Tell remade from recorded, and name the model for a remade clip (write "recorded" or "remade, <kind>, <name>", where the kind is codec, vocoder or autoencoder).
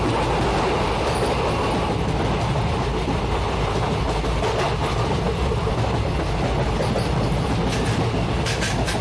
recorded